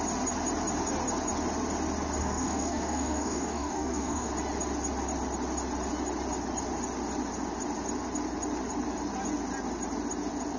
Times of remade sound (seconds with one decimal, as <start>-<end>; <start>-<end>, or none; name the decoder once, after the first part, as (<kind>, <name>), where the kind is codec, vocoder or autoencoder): 2.2-4.3 (codec, DAC)